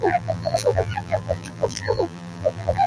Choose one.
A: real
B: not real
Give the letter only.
B